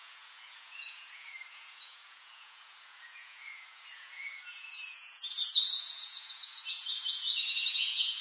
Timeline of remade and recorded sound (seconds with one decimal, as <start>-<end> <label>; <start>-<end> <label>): 0.0-8.2 remade